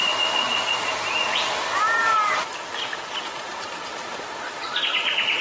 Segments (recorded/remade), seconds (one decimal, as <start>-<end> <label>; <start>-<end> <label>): 0.0-2.4 remade; 2.4-3.5 recorded; 3.5-4.6 remade; 4.6-5.4 recorded